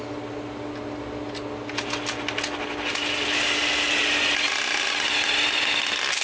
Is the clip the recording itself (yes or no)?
yes